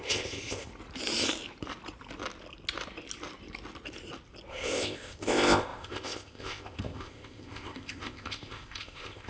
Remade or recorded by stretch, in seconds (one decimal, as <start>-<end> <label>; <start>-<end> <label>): 0.0-0.7 remade; 0.7-4.5 recorded; 4.5-9.3 remade